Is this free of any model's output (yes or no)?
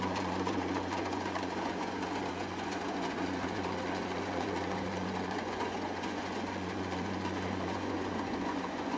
no